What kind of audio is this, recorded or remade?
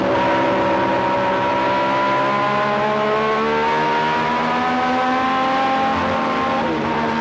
recorded